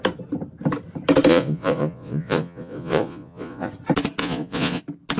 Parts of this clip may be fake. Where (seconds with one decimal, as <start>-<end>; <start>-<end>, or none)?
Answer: 1.3-3.7; 4.2-4.8